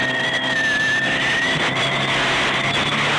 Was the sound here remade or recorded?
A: recorded